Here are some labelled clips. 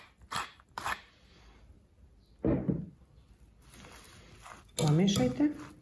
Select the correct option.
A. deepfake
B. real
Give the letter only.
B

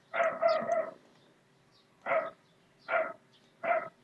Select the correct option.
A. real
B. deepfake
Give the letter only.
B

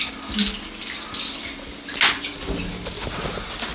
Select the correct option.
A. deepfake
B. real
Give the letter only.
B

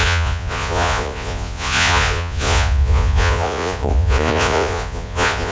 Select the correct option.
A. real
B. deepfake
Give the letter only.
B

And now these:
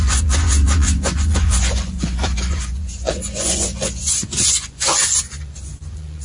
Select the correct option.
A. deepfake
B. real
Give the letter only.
A